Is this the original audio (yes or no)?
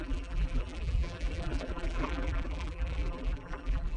no